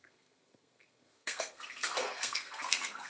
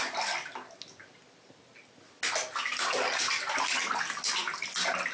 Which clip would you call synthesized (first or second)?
first